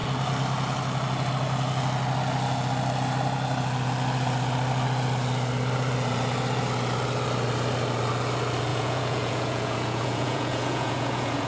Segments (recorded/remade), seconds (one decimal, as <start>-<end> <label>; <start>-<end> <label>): 0.0-8.7 recorded; 8.7-11.5 remade